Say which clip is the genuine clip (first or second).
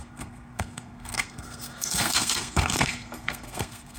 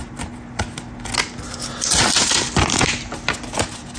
second